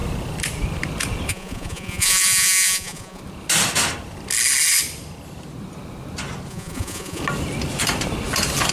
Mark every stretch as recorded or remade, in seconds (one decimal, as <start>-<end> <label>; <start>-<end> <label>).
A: 0.0-1.3 recorded; 1.3-3.2 remade; 3.2-6.5 recorded; 6.5-7.2 remade; 7.2-8.7 recorded